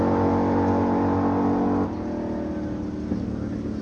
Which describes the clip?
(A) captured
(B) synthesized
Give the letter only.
A